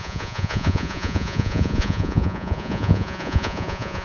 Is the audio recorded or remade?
remade